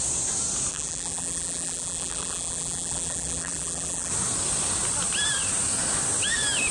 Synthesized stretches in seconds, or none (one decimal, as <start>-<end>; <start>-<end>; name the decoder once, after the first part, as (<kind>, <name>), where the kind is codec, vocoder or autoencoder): 0.7-4.1 (vocoder, BigVGAN v2)